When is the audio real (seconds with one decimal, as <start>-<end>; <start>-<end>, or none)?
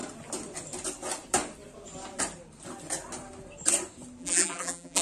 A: 0.0-4.2